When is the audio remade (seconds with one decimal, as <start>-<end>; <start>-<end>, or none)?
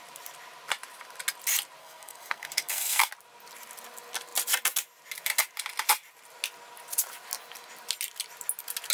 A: 1.8-3.1